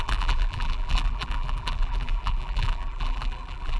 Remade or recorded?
remade